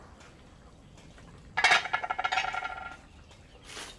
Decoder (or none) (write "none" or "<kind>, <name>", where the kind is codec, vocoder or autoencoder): none